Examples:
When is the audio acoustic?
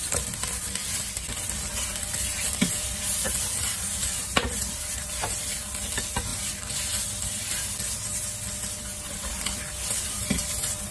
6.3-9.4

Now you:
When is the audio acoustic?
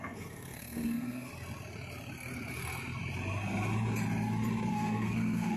1.3-4.7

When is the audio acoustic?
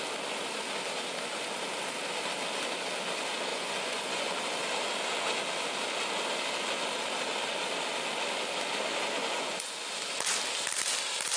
0.0-3.5; 4.3-9.2; 9.9-11.4